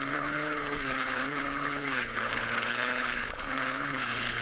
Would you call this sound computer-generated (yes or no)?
yes